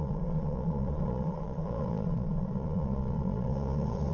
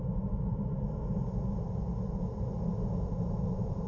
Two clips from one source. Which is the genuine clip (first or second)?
second